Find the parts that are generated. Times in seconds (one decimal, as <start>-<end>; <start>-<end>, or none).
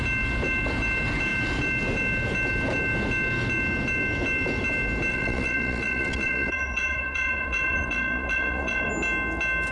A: 5.1-8.9